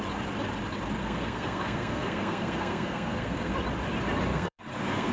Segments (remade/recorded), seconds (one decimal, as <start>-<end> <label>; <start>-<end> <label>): 0.0-1.0 recorded; 1.0-3.5 remade; 3.5-4.3 recorded; 4.3-5.1 remade

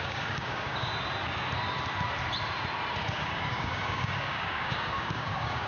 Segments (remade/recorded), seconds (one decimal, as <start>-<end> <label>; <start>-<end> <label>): 0.0-0.9 remade; 0.9-2.9 recorded; 2.9-5.7 remade

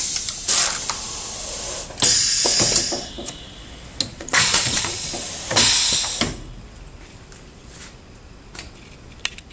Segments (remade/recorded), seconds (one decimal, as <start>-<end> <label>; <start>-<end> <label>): 0.0-4.1 recorded; 4.1-5.1 remade; 5.1-9.5 recorded

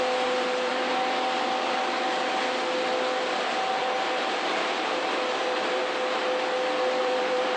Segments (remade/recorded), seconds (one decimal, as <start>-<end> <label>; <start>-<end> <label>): 0.0-0.7 remade; 0.7-3.8 recorded; 3.8-5.8 remade; 5.8-7.0 recorded; 7.0-7.6 remade

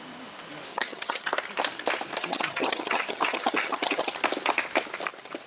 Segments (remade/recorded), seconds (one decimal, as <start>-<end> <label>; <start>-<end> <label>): 0.0-0.7 recorded; 0.7-1.3 remade; 1.3-2.2 recorded; 2.2-4.1 remade; 4.1-5.5 recorded